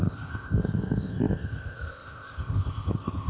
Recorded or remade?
remade